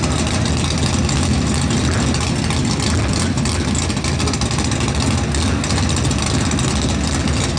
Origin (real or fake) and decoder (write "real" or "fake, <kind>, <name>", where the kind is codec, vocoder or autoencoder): real